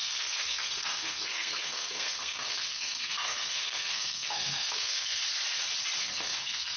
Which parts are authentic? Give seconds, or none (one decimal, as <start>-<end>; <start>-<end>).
5.2-6.0